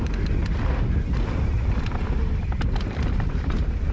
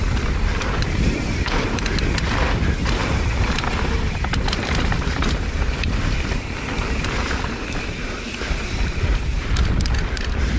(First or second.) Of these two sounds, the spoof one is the second